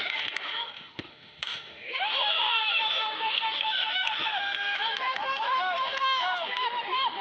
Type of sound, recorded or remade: remade